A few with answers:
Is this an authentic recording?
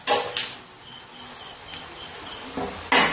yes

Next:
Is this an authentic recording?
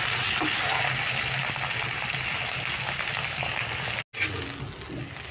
yes